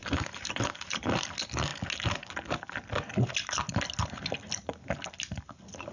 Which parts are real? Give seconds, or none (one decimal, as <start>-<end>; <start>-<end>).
1.2-5.9